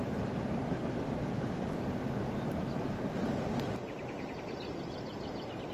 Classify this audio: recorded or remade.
recorded